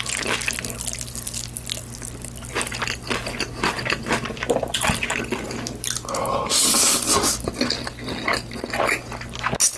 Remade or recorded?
recorded